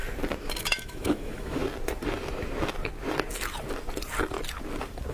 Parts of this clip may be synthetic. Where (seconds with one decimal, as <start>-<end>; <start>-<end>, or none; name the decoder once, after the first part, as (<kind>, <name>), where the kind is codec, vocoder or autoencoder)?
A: 0.6-1.6 (autoencoder, DAC-VAE)